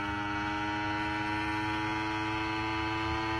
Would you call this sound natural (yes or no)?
yes